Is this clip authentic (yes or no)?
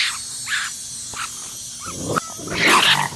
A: yes